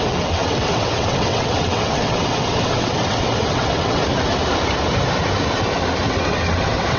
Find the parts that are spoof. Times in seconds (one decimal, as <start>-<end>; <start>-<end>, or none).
0.0-4.0; 6.1-7.0